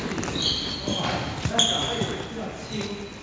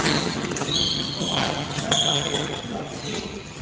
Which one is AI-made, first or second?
second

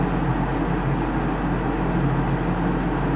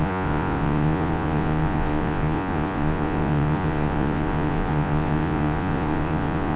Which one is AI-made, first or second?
second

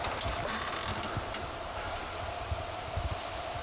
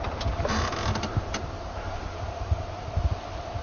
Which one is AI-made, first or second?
first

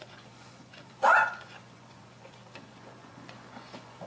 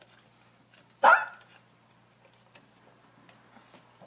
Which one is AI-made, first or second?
first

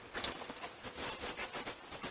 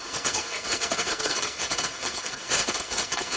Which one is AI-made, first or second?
second